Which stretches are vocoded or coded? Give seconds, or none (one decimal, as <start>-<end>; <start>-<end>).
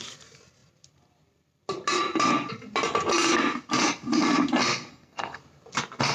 4.9-5.4